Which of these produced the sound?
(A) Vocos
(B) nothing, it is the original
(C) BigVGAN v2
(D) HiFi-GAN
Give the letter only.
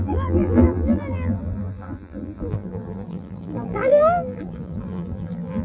C